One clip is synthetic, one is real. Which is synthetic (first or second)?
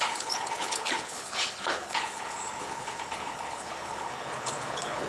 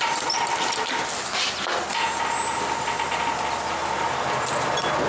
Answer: first